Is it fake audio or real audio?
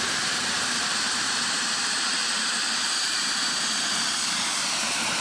fake